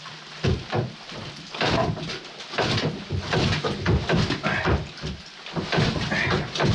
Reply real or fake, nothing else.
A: real